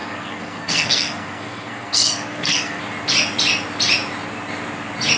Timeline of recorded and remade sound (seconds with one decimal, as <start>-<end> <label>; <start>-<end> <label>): 0.0-2.8 remade; 2.8-5.2 recorded